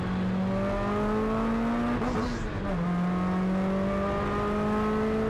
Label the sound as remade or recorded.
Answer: recorded